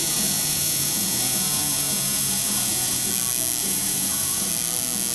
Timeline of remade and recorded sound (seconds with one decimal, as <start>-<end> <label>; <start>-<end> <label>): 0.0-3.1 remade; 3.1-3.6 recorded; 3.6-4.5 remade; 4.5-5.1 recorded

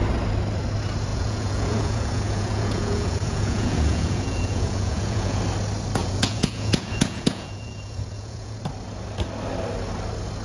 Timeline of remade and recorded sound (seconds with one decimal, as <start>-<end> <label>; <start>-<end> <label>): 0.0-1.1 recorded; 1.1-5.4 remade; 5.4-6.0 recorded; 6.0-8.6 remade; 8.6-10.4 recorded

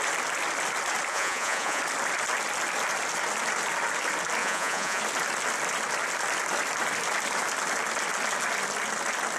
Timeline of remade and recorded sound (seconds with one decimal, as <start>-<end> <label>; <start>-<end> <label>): 0.0-1.1 recorded; 1.1-1.8 remade; 1.8-4.4 recorded; 4.4-5.0 remade; 5.0-9.4 recorded